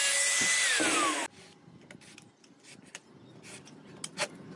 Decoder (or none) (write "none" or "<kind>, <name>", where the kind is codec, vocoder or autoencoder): none